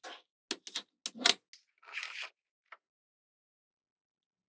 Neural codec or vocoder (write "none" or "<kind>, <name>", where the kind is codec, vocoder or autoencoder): none